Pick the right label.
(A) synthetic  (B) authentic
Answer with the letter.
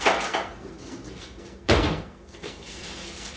A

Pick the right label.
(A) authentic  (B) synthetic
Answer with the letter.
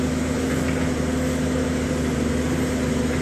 A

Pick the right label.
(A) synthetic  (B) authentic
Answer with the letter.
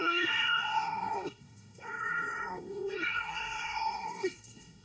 A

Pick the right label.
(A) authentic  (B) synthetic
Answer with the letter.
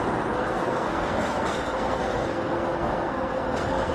B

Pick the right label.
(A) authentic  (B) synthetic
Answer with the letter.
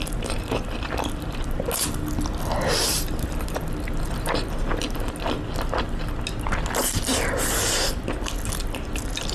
A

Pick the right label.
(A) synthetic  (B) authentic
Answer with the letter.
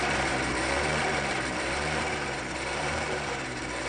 A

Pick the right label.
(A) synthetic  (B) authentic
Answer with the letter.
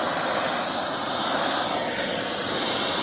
B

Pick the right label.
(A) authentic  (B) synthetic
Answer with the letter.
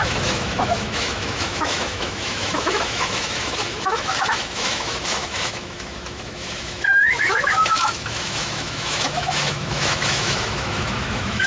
B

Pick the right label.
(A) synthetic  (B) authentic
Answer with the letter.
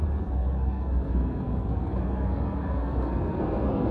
A